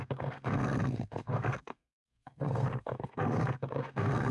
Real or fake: fake